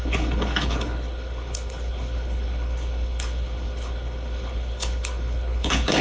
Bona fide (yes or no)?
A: no